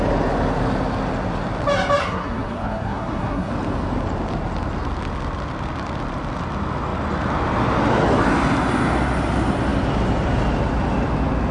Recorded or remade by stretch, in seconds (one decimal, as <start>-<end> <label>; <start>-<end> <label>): 0.0-2.0 recorded; 2.0-3.5 remade; 3.5-11.5 recorded